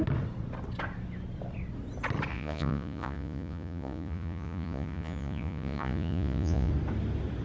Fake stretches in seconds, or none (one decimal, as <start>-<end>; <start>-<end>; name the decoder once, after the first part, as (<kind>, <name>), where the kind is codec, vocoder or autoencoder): 2.3-6.7 (vocoder, Vocos)

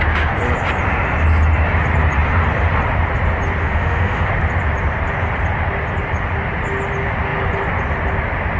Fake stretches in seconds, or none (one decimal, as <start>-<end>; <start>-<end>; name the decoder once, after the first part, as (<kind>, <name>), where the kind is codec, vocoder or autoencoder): 3.6-4.3 (autoencoder, DAC-VAE)

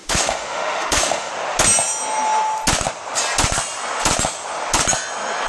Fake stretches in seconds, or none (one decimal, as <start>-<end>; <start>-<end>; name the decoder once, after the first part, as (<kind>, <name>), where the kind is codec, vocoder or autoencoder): 0.0-1.3 (autoencoder, DAC-VAE)

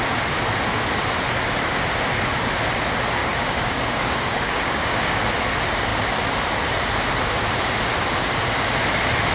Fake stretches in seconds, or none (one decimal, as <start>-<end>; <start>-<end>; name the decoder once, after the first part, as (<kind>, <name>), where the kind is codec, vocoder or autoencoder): 3.2-5.2 (codec, DAC)